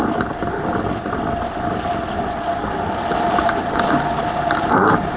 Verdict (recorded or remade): recorded